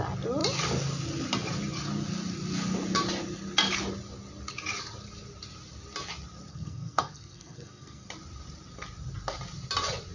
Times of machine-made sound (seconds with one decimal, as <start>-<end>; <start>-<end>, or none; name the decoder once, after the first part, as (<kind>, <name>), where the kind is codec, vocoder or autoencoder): 6.5-8.1 (codec, SNAC)